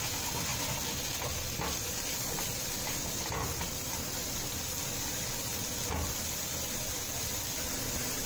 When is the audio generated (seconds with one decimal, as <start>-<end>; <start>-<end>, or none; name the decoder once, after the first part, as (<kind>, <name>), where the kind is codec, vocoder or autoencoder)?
none